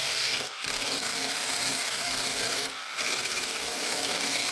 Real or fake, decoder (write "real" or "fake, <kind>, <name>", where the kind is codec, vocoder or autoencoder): fake, codec, DAC